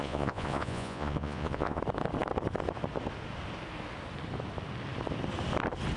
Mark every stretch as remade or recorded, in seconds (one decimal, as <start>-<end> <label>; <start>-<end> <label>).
0.0-1.8 remade; 1.8-6.0 recorded